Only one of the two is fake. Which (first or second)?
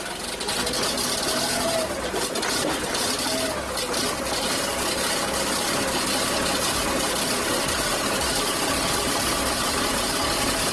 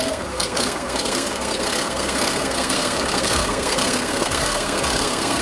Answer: second